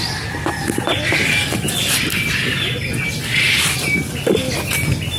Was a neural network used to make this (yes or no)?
no